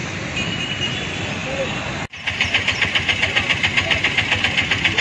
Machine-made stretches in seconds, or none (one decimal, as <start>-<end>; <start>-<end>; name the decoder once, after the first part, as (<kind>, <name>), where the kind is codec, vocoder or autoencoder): 0.0-1.4 (vocoder, BigVGAN v2); 4.4-5.0